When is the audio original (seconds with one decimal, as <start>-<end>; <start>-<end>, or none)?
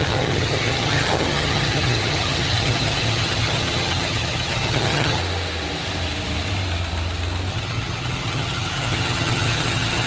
5.2-7.5